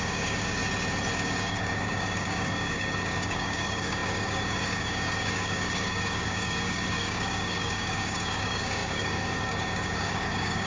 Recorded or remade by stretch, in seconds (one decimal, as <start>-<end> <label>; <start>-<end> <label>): 0.0-0.6 remade; 0.6-1.1 recorded; 1.1-10.7 remade